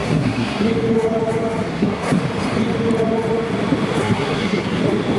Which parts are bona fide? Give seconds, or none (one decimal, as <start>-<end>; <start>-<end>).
0.7-1.7; 2.2-4.0; 4.8-5.2